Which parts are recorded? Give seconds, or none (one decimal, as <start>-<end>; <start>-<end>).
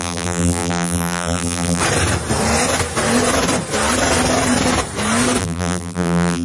1.8-5.4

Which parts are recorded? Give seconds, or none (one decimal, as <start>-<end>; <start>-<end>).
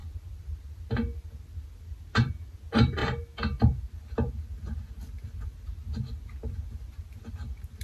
0.0-7.8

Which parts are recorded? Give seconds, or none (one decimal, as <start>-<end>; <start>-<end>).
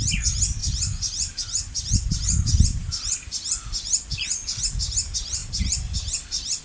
0.0-0.6; 4.6-6.6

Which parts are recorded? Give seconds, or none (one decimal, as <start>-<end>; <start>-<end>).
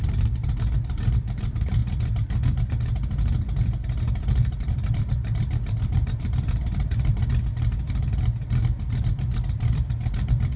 1.8-4.2; 7.2-9.0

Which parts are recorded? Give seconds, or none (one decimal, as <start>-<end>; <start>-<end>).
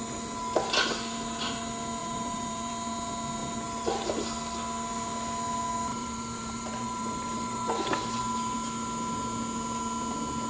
0.0-2.0; 2.7-5.9; 8.2-10.5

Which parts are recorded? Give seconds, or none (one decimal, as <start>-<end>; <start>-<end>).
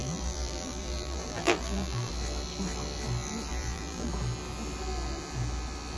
2.1-3.5; 4.1-6.0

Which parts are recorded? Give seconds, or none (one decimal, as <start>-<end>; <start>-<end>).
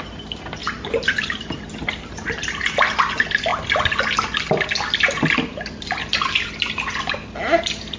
0.0-0.6; 2.8-8.0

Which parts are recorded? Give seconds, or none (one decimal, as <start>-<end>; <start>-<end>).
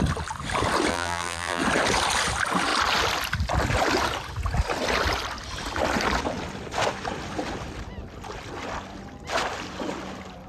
0.0-0.9; 1.6-10.5